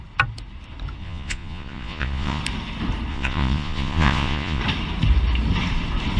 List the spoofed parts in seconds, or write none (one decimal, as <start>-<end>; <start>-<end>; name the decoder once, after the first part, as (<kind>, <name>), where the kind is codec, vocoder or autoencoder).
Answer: 1.0-2.4 (vocoder, Vocos); 3.1-4.6